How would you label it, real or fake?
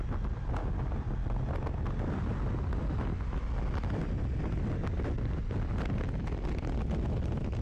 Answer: real